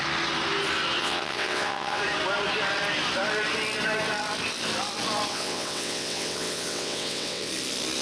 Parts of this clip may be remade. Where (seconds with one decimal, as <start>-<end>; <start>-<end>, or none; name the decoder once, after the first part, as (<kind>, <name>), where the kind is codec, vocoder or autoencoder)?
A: 1.0-2.0 (vocoder, WaveNeXt); 5.3-7.5